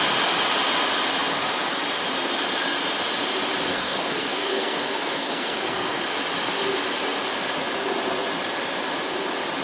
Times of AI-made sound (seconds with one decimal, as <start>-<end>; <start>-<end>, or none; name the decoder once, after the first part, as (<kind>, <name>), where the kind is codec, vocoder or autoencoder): 3.7-6.0 (codec, SNAC)